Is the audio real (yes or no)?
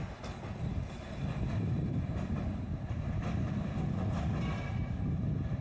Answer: yes